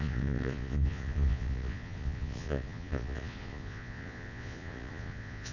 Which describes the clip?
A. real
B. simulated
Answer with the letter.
B